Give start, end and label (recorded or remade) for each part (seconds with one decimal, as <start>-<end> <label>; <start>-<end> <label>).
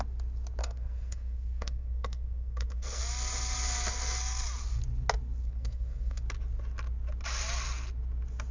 0.0-0.6 recorded; 0.6-3.0 remade; 3.0-5.4 recorded; 5.4-6.2 remade; 6.2-8.5 recorded